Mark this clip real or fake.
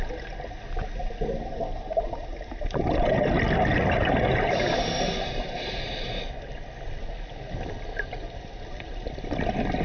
real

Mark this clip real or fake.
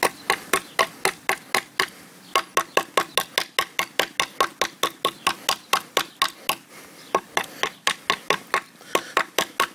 real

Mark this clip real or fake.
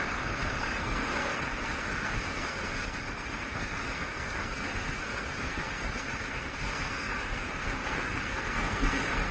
fake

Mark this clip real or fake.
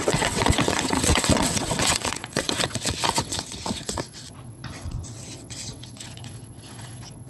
fake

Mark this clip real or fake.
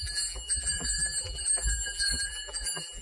fake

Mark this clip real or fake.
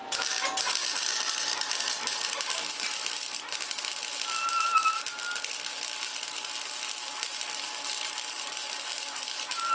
real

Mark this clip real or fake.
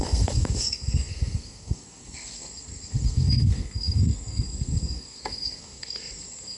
fake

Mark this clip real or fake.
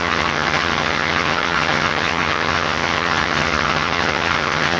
fake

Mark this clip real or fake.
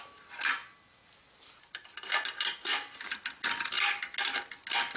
real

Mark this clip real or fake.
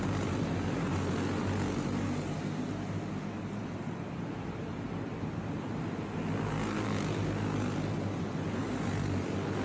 real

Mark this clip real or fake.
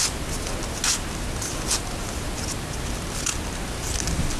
real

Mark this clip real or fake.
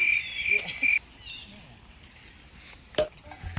real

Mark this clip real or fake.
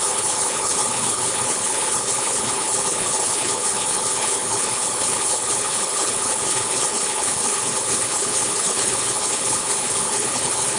fake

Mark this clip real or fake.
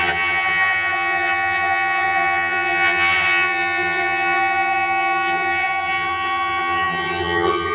fake